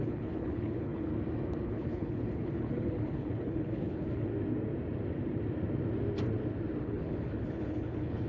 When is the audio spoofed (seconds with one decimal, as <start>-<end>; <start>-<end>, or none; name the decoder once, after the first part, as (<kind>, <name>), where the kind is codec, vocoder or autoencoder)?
0.0-1.1 (codec, HILCodec); 1.7-4.3; 6.8-8.3